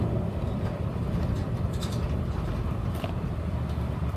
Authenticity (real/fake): real